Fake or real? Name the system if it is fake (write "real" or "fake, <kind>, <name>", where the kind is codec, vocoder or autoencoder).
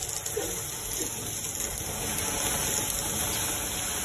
real